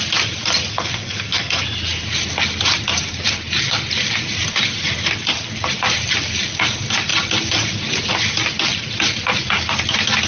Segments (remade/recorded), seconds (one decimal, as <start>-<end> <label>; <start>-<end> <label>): 0.0-0.7 recorded; 0.7-1.6 remade; 1.6-10.3 recorded